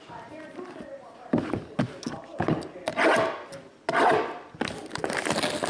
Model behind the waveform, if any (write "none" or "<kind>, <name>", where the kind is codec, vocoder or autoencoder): none